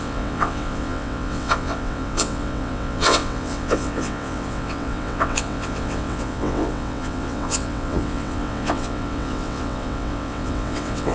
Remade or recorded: remade